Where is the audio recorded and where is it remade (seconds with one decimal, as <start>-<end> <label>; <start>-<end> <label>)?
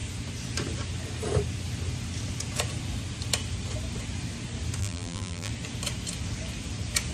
0.0-4.8 recorded; 4.8-5.5 remade; 5.5-7.1 recorded